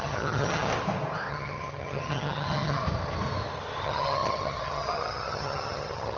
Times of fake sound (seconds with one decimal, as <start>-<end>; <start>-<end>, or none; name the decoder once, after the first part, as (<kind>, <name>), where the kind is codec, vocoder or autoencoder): 0.0-0.7 (vocoder, HiFi-GAN); 1.3-2.8; 3.8-6.2